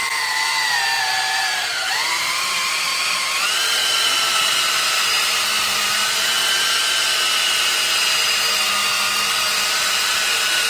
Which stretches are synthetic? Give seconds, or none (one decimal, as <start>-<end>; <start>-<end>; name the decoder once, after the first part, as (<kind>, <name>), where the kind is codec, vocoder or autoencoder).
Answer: 0.0-8.7 (vocoder, BigVGAN v2); 9.5-10.7